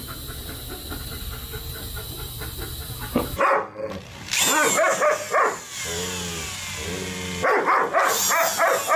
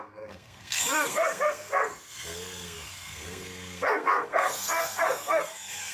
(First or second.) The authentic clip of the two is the first